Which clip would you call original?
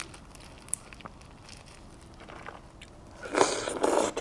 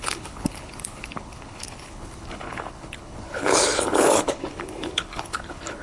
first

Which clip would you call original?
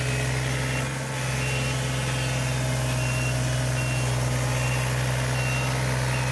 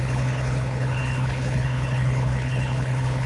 first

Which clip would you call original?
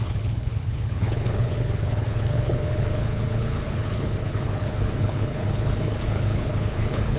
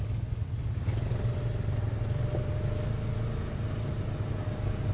second